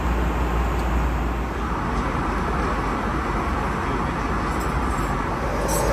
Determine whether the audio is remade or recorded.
recorded